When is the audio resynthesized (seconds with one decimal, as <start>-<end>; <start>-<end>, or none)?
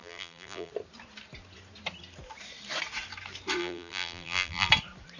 0.0-0.7; 3.6-4.7